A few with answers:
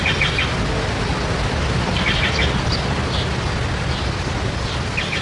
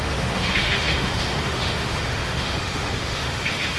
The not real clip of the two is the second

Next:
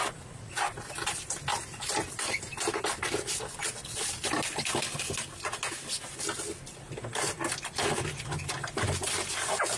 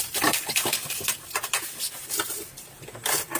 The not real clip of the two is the second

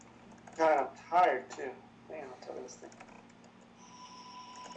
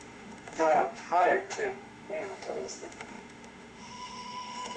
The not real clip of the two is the second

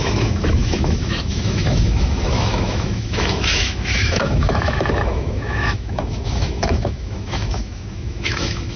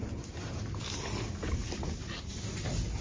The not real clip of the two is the first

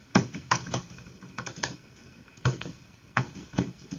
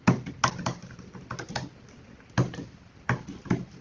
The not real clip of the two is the first